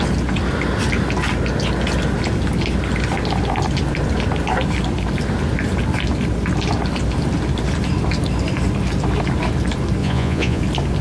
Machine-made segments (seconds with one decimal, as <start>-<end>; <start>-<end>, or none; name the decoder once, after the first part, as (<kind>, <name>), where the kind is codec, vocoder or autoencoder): 10.0-10.6 (vocoder, Vocos)